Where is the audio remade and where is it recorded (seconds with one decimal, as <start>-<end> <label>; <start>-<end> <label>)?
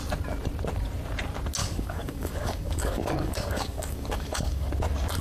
0.0-1.6 recorded; 1.6-4.7 remade; 4.7-5.2 recorded